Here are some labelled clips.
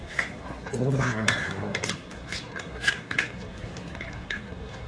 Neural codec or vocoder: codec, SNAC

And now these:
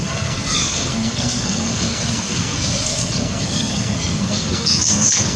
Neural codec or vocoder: codec, SNAC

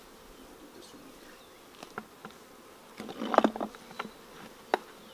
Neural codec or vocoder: none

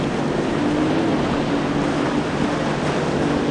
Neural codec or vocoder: none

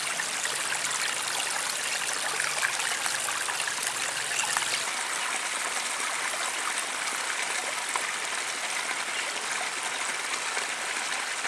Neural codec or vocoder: none